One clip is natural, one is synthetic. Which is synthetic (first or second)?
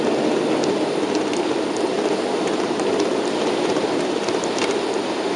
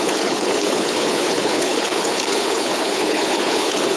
second